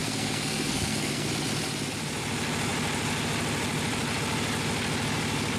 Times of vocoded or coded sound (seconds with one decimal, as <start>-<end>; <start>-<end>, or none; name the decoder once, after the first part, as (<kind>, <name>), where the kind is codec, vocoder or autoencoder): 0.0-1.3 (codec, SNAC)